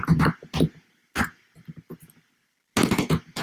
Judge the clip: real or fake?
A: real